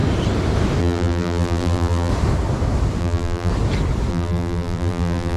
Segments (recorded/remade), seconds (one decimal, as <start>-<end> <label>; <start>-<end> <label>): 0.0-0.8 recorded; 0.8-2.1 remade; 2.1-3.0 recorded; 3.0-3.5 remade; 3.5-4.1 recorded; 4.1-5.4 remade